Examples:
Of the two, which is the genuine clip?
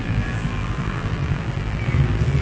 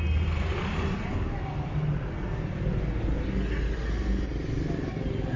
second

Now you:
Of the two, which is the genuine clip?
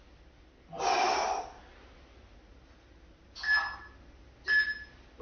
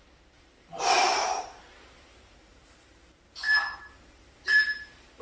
first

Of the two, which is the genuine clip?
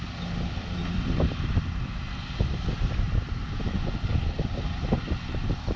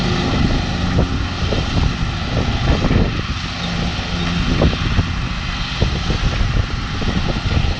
second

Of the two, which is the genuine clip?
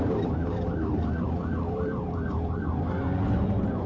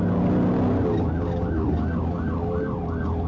second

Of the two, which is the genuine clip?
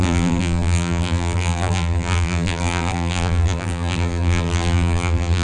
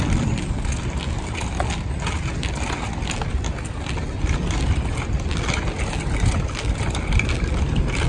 second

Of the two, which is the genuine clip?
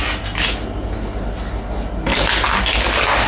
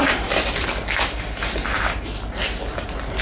first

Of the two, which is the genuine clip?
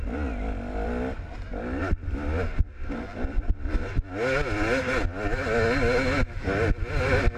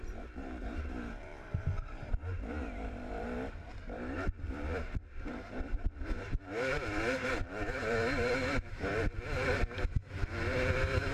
first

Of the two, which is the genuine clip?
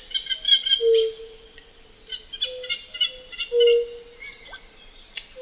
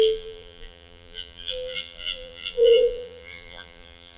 first